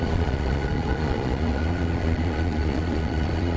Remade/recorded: remade